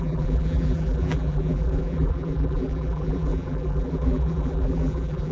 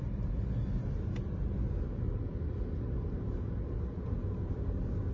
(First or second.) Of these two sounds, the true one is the second